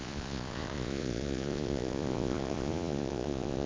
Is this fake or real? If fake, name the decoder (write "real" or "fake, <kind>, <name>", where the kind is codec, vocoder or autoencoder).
fake, vocoder, Vocos